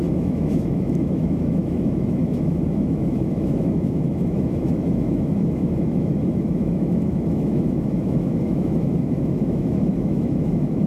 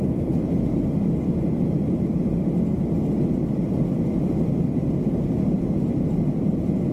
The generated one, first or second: first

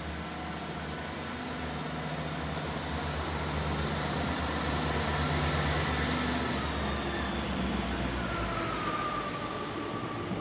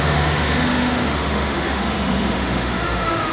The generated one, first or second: second